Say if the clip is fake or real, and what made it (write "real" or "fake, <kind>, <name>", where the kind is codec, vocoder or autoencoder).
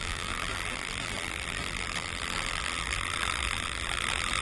fake, vocoder, BigVGAN v2